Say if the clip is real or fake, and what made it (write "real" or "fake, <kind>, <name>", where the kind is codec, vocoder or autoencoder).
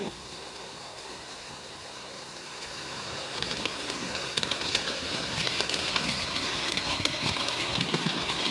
fake, codec, SNAC